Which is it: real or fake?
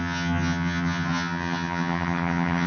fake